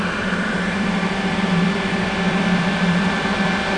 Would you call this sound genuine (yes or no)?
no